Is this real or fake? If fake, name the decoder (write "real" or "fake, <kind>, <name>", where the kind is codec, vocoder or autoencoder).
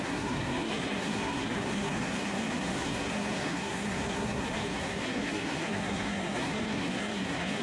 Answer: fake, codec, SNAC